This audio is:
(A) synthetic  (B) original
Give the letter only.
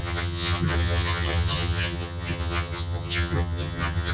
A